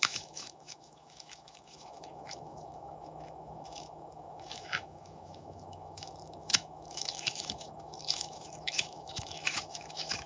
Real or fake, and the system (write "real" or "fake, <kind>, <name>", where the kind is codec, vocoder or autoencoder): fake, autoencoder, DAC-VAE